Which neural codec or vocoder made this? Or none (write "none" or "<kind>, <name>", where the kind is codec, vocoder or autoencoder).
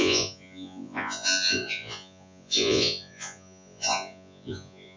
vocoder, Vocos